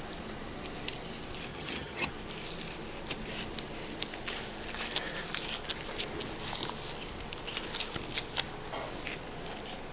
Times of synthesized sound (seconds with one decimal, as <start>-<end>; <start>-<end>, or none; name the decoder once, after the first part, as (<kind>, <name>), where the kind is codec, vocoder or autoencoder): 1.5-2.1 (vocoder, HiFi-GAN)